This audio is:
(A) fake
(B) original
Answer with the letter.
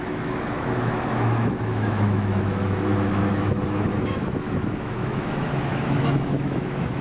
A